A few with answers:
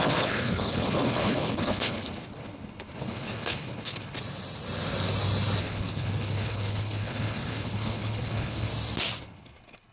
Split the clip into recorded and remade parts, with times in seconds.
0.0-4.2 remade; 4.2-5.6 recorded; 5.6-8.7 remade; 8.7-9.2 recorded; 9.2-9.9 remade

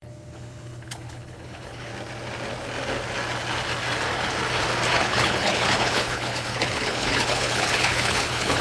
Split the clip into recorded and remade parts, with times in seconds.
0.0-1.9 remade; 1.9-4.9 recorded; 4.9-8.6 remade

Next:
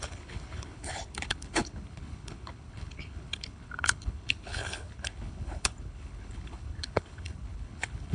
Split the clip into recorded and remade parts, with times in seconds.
0.0-8.1 remade

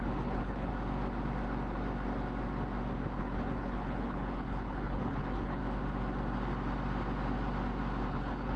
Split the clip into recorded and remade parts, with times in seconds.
0.0-0.7 remade; 0.7-3.2 recorded; 3.2-5.6 remade; 5.6-8.1 recorded; 8.1-8.6 remade